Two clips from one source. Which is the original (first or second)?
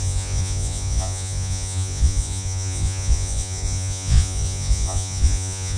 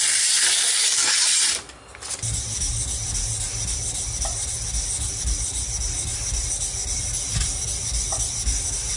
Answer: second